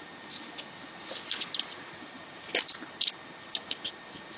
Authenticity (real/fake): real